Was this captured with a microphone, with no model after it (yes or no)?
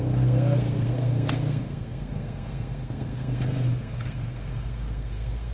no